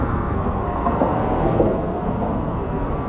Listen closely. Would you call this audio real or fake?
fake